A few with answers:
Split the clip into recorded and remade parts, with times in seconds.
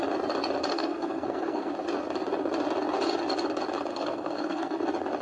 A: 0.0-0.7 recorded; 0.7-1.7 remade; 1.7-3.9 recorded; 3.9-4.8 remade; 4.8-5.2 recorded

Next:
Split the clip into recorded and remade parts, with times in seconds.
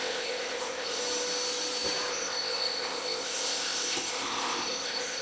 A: 0.0-1.0 remade; 1.0-2.1 recorded; 2.1-5.2 remade